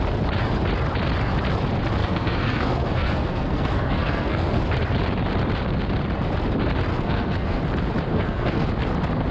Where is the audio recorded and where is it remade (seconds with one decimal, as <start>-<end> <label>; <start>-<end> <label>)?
0.0-2.0 recorded; 2.0-4.6 remade; 4.6-6.9 recorded; 6.9-7.6 remade; 7.6-8.1 recorded; 8.1-8.7 remade; 8.7-9.3 recorded